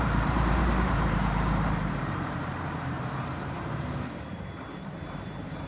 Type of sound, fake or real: fake